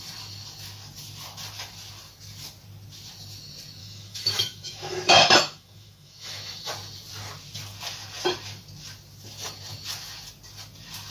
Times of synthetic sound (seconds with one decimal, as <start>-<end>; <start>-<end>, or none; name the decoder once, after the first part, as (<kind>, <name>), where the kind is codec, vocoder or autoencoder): 3.8-6.7 (autoencoder, DAC-VAE)